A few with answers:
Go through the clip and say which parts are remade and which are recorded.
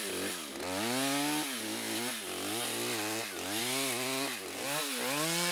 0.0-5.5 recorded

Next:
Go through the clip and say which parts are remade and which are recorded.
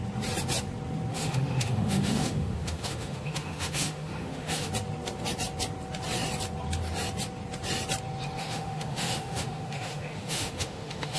0.0-1.1 recorded; 1.1-4.7 remade; 4.7-8.4 recorded; 8.4-11.2 remade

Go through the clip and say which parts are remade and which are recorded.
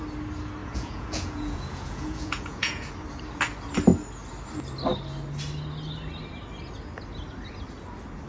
0.0-0.6 recorded; 0.6-2.9 remade; 2.9-8.3 recorded